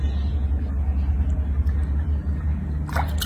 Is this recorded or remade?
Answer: recorded